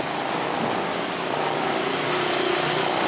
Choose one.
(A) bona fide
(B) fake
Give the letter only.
A